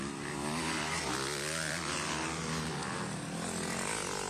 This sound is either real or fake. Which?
real